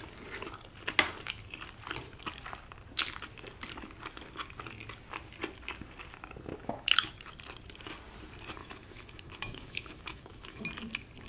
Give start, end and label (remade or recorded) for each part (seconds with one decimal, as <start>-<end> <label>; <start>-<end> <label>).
0.0-6.5 recorded; 6.5-7.1 remade; 7.1-8.6 recorded; 8.6-10.6 remade; 10.6-11.3 recorded

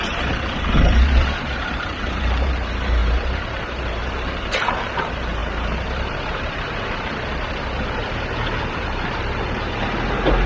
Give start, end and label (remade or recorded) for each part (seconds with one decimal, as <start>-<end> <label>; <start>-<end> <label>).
0.0-10.5 remade

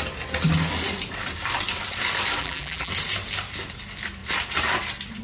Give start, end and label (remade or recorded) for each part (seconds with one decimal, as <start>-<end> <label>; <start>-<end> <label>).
0.0-2.4 recorded; 2.4-2.9 remade; 2.9-5.2 recorded